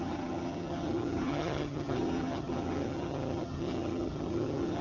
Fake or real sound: fake